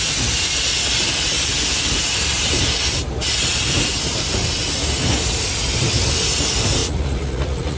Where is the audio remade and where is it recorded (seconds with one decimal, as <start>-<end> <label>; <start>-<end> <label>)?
0.0-6.8 recorded; 6.8-7.8 remade